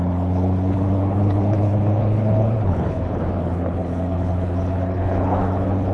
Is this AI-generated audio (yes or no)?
yes